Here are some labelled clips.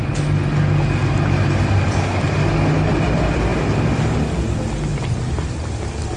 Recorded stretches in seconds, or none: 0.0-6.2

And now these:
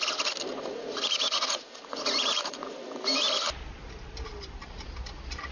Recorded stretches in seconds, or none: 0.0-0.5; 2.8-5.5

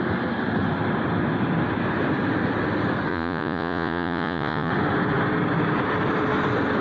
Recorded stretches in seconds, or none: 0.0-3.1; 4.7-6.8